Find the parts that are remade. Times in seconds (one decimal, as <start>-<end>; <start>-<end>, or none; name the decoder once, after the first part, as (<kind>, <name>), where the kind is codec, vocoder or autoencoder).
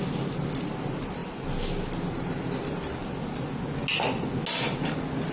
none